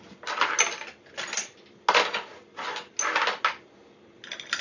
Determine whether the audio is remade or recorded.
recorded